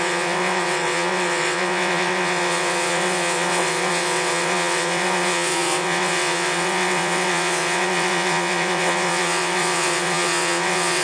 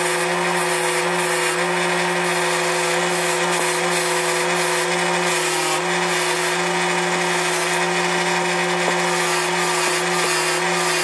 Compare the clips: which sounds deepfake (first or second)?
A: first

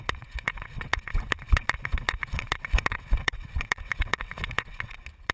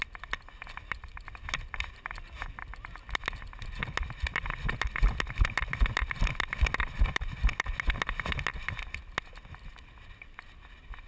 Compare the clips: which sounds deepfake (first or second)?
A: first